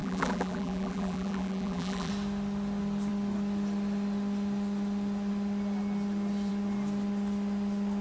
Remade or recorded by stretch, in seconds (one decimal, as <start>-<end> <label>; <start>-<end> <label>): 0.0-2.1 remade; 2.1-8.0 recorded